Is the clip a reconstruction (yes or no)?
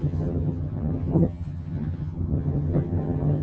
yes